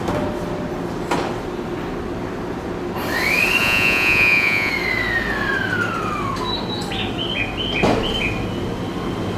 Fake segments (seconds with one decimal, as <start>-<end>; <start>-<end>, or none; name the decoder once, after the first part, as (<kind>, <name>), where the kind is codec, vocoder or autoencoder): 3.6-4.7 (vocoder, Vocos)